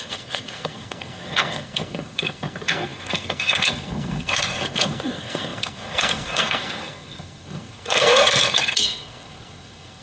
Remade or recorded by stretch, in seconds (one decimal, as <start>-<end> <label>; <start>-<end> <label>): 0.0-10.0 remade